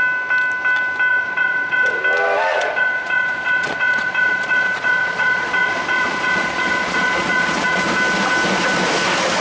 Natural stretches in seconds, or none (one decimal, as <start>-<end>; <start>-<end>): 0.0-1.1; 2.0-2.5; 7.8-9.4